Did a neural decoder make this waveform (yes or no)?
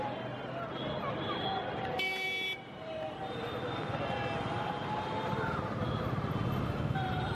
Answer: no